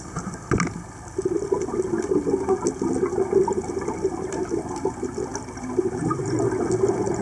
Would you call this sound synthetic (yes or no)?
no